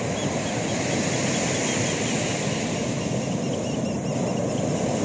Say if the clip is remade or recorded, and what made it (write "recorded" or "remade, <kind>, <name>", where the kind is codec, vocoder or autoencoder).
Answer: recorded